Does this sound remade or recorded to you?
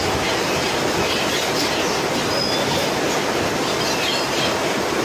recorded